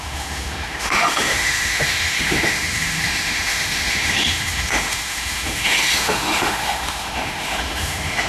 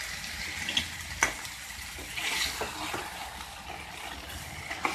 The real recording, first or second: second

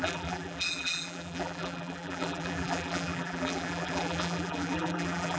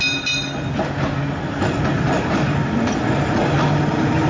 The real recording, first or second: second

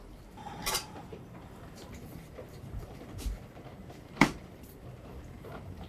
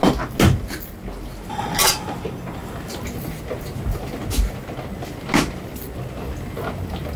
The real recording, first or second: second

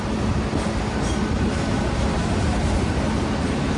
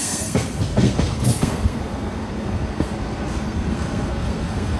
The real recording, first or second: first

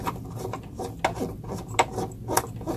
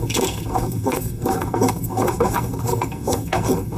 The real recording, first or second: first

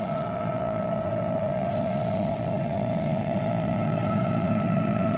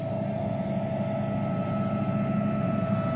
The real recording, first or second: second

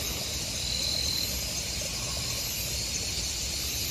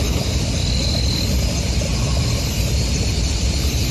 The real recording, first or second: first